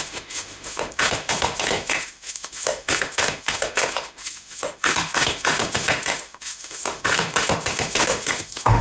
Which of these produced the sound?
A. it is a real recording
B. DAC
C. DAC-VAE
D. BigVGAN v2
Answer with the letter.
C